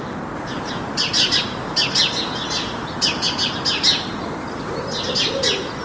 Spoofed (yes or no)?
no